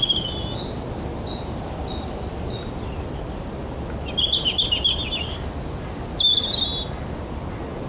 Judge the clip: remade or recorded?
recorded